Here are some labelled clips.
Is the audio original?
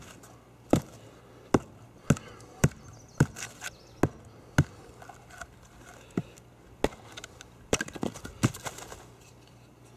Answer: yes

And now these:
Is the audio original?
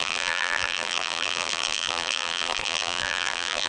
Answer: no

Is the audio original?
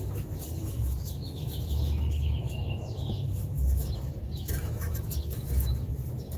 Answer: no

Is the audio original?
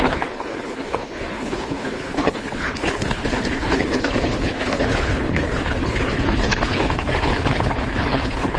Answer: no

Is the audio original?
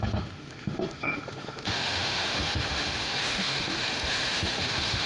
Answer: no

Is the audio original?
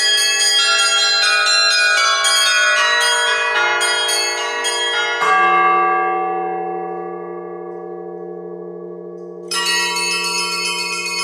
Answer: yes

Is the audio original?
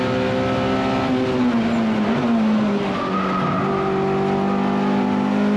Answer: yes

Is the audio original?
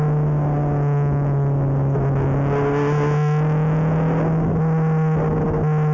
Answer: yes